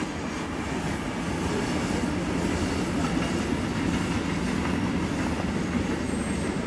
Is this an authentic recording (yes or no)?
yes